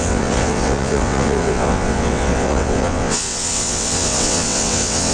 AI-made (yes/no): yes